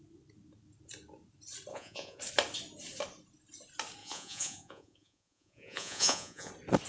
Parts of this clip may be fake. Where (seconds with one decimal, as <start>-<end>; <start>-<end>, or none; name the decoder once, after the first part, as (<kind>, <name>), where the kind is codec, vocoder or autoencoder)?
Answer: 1.7-2.2 (vocoder, Vocos); 4.0-6.5